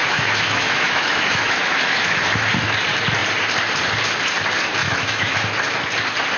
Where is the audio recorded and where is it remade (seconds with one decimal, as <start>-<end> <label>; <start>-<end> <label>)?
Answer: 0.0-2.2 remade; 2.2-4.8 recorded; 4.8-5.5 remade; 5.5-6.4 recorded